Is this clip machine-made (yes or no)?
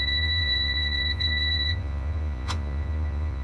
yes